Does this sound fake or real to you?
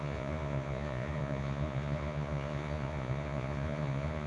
fake